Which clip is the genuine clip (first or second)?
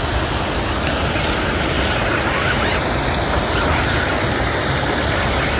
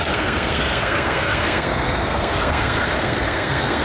first